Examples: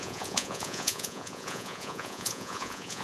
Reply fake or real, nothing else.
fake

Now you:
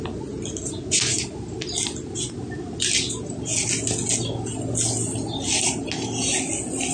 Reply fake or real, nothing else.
real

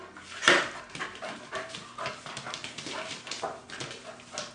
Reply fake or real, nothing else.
real